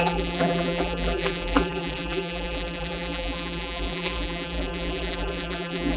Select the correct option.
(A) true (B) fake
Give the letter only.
B